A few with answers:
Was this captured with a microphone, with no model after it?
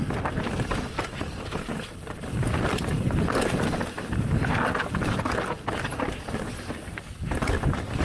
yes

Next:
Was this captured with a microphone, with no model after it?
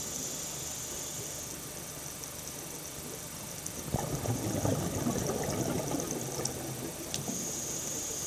yes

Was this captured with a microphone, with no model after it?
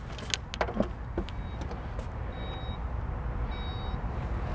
yes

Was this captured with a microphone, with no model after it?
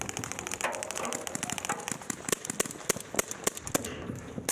yes